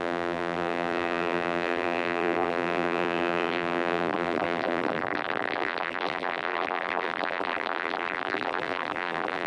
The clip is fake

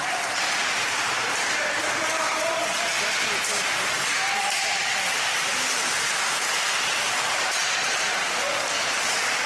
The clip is fake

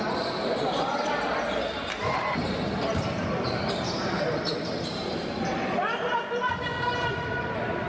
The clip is fake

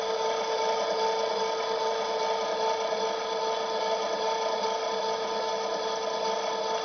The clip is real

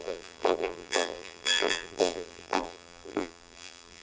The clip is fake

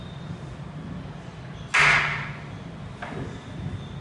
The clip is real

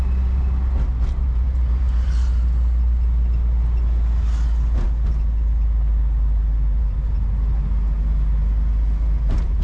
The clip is real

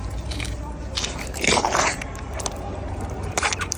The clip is fake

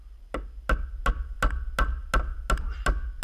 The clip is real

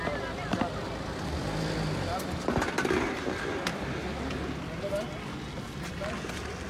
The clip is real